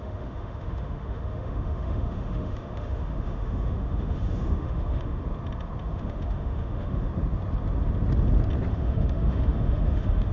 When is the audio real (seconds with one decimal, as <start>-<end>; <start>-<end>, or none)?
5.2-5.8; 7.1-8.7